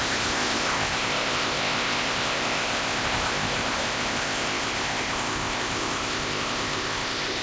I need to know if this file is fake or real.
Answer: fake